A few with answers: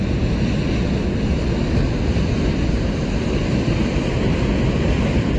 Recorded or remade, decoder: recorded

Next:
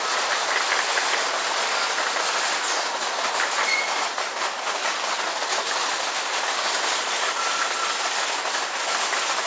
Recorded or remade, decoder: recorded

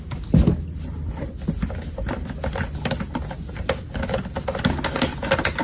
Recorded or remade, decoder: recorded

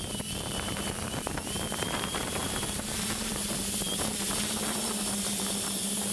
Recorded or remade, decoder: remade, vocoder, BigVGAN v2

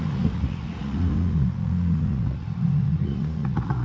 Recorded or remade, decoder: remade, vocoder, Vocos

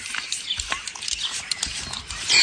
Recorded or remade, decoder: recorded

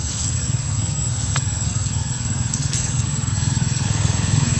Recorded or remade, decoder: remade, codec, SNAC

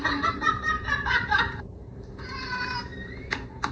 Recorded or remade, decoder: remade, vocoder, BigVGAN v2